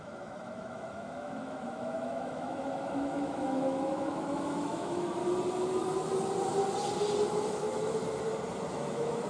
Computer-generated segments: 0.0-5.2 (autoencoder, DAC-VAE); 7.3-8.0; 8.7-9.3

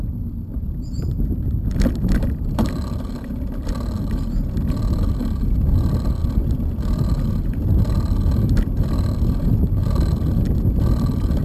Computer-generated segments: 0.5-1.3 (vocoder, BigVGAN v2)

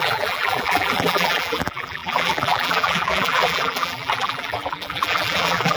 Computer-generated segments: 0.0-5.8 (vocoder, BigVGAN v2)

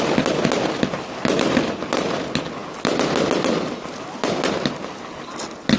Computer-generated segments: none

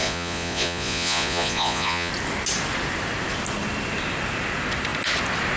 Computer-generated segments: 0.0-2.1 (vocoder, Vocos)

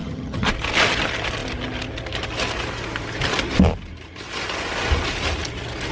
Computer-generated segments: 0.0-0.5 (vocoder, HiFi-GAN)

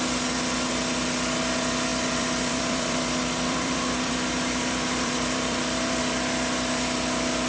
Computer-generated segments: 1.9-6.0 (vocoder, BigVGAN v2)

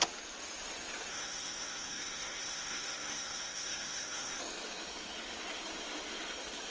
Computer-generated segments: 1.1-4.4 (codec, SNAC)